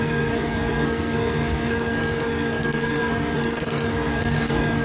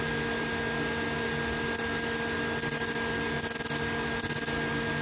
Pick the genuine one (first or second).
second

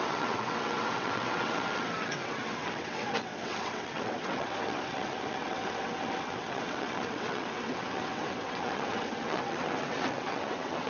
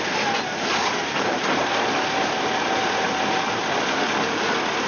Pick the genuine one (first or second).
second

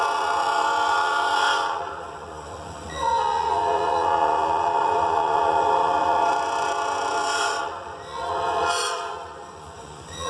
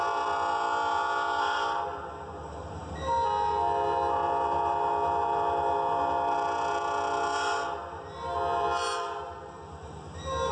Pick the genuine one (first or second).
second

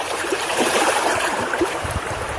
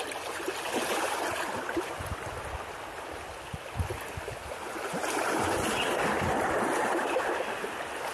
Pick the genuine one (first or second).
second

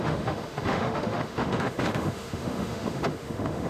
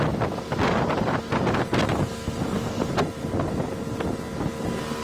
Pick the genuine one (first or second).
second